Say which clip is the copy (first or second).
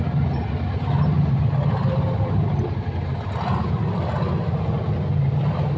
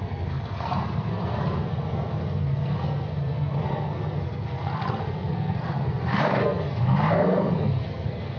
second